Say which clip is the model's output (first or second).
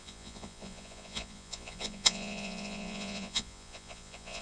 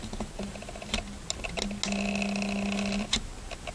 first